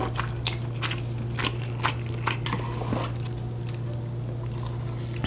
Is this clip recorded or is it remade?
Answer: recorded